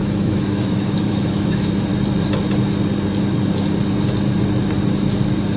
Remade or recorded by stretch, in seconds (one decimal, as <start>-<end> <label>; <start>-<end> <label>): 0.0-1.9 remade; 1.9-5.6 recorded